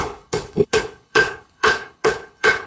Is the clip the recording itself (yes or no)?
no